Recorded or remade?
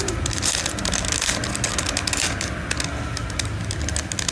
recorded